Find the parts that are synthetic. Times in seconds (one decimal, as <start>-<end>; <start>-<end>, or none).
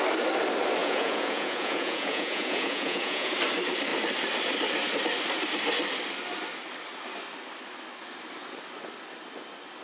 0.8-3.3